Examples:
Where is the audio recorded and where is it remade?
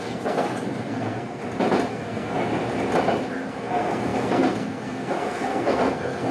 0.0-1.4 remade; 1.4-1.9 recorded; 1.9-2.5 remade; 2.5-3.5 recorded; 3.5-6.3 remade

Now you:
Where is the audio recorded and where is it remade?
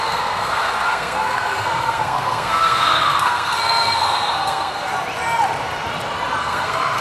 0.0-4.9 remade; 4.9-6.4 recorded; 6.4-7.0 remade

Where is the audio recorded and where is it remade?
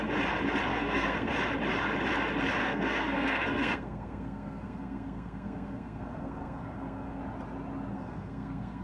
0.0-0.7 recorded; 0.7-1.3 remade; 1.3-2.6 recorded; 2.6-7.2 remade; 7.2-7.9 recorded; 7.9-8.8 remade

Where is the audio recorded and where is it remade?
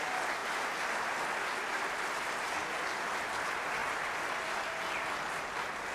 0.0-5.9 recorded